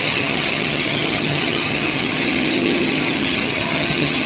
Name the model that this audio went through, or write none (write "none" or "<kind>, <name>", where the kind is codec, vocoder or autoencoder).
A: vocoder, HiFi-GAN